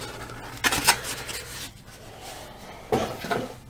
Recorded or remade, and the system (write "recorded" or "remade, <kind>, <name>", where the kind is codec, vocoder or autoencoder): recorded